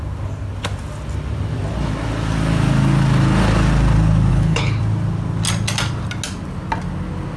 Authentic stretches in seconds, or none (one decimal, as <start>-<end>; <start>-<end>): 0.0-4.3; 4.8-7.4